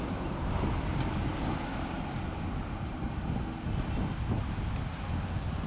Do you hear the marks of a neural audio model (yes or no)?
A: no